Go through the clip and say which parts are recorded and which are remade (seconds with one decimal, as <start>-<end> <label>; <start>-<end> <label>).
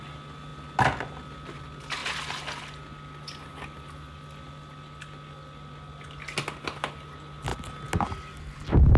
0.0-9.0 recorded